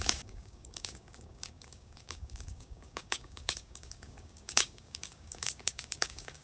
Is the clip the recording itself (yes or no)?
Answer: no